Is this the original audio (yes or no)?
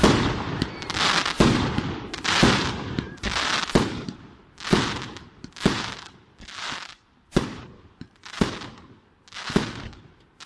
yes